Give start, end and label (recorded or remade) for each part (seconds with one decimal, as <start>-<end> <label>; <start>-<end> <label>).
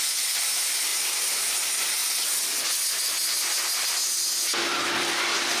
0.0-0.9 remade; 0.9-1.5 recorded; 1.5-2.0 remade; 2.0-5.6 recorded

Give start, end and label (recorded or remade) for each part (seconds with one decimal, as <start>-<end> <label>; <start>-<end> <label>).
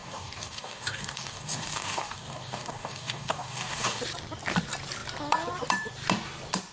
0.0-4.0 remade; 4.0-6.7 recorded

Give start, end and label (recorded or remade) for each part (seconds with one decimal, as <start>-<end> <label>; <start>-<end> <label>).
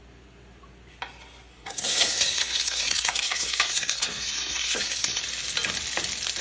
0.0-1.5 recorded; 1.5-5.2 remade; 5.2-6.4 recorded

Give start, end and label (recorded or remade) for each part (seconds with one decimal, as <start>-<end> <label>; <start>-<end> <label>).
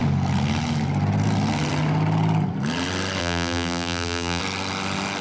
0.0-3.2 recorded; 3.2-4.4 remade; 4.4-5.2 recorded